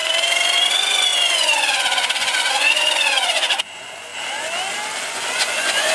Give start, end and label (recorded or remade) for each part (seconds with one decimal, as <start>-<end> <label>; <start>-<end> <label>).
0.0-0.7 recorded; 0.7-4.1 remade; 4.1-5.0 recorded; 5.0-5.9 remade